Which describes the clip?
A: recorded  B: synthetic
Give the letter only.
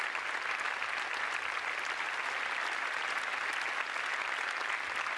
A